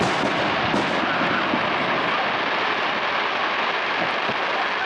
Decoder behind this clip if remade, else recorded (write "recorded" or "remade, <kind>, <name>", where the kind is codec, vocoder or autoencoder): recorded